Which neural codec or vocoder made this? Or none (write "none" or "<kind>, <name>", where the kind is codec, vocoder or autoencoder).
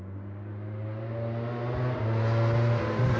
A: none